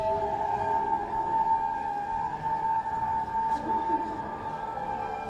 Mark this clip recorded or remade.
remade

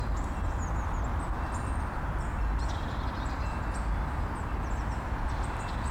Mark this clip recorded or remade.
recorded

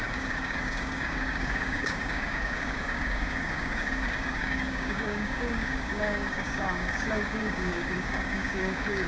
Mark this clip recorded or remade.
remade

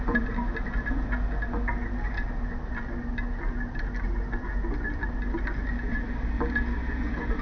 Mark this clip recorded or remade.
recorded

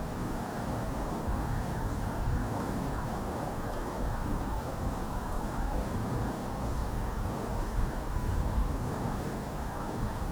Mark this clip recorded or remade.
remade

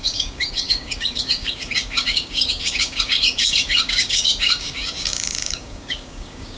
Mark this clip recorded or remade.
remade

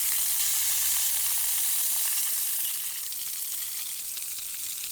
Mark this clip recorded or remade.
recorded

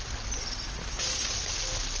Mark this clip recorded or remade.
recorded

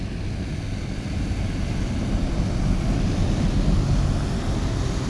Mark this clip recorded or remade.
recorded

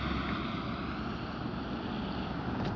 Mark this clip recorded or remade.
recorded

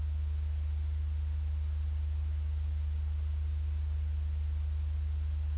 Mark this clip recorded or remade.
recorded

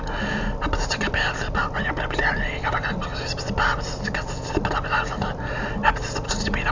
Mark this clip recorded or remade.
recorded